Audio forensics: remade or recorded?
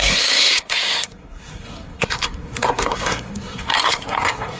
remade